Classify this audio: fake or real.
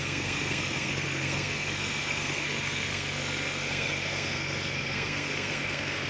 fake